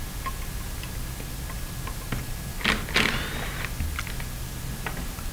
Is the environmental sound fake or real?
real